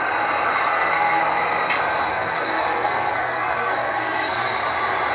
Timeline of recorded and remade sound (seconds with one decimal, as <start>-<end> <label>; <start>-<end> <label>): 0.0-0.7 recorded; 0.7-1.2 remade; 1.2-2.1 recorded; 2.1-4.6 remade; 4.6-5.1 recorded